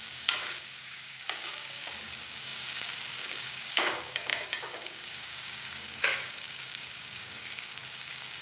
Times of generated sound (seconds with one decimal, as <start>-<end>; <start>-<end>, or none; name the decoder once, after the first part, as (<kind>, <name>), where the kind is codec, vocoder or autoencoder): 0.0-8.4 (codec, DAC)